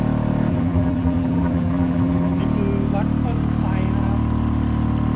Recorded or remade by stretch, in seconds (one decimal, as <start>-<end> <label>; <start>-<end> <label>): 0.0-0.5 recorded; 0.5-2.4 remade; 2.4-5.2 recorded